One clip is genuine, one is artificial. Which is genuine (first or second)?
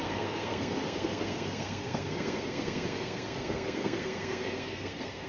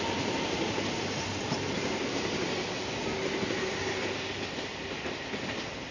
second